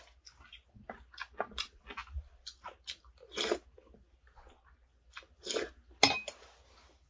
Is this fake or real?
real